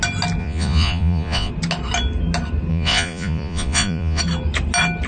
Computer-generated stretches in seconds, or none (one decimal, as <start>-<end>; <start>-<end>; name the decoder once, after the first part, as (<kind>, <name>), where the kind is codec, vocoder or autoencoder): 0.4-1.5 (vocoder, Vocos); 2.7-4.2